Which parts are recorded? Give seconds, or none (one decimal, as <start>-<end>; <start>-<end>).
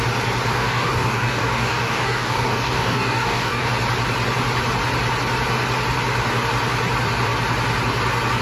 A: 0.0-0.5; 3.7-8.4